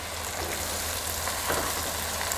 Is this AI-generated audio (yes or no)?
no